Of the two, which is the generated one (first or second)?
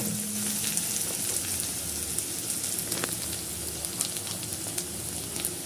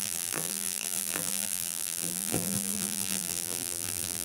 second